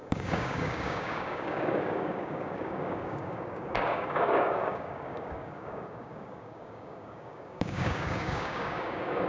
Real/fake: fake